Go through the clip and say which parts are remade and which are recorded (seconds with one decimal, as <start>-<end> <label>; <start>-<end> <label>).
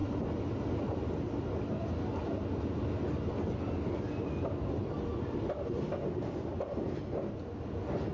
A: 0.0-8.1 recorded